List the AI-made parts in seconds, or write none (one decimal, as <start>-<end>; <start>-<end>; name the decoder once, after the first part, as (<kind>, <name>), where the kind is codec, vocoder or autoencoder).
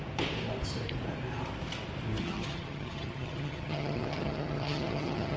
2.2-5.4 (vocoder, HiFi-GAN)